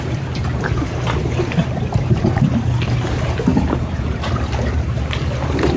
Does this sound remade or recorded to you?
remade